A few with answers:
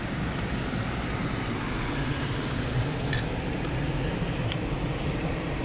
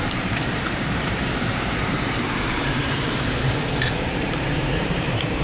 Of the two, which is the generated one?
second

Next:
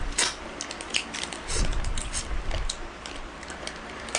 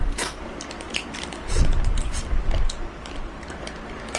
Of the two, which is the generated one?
second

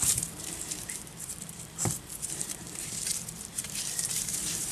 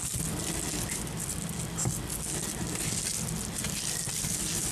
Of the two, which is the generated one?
first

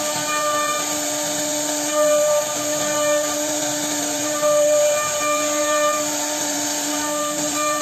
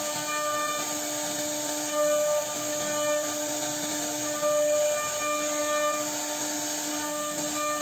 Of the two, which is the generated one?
first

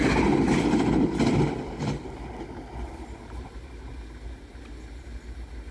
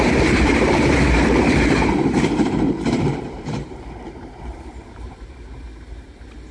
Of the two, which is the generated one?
second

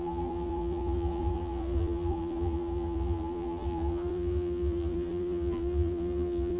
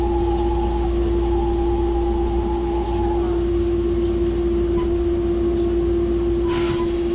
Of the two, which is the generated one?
first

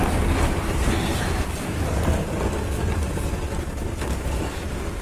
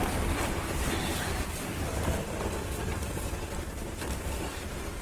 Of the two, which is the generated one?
second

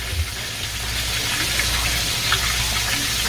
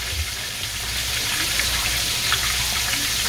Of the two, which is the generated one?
second